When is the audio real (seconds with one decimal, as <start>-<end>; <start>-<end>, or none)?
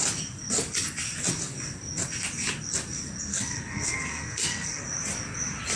0.0-3.3; 4.8-5.8